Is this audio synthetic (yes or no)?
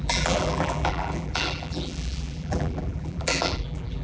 yes